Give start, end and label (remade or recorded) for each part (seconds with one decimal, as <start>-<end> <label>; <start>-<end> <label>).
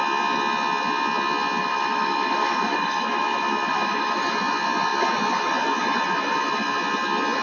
0.0-1.6 recorded; 1.6-4.2 remade; 4.2-7.4 recorded